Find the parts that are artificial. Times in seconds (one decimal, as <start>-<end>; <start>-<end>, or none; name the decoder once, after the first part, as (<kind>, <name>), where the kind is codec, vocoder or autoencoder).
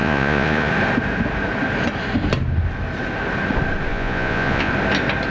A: 0.0-0.7 (vocoder, Vocos); 3.9-4.7